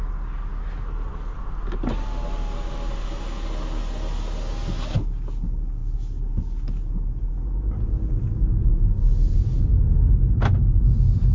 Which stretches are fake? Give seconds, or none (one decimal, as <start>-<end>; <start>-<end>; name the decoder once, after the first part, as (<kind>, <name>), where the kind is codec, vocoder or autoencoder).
none